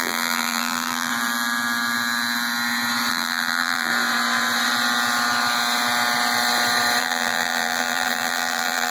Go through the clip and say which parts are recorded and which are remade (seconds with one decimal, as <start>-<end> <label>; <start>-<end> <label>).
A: 0.0-1.1 remade; 1.1-3.1 recorded; 3.1-3.9 remade; 3.9-7.0 recorded; 7.0-8.9 remade